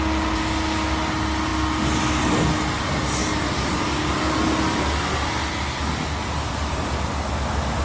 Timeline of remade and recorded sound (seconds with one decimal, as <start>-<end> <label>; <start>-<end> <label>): 0.0-7.8 recorded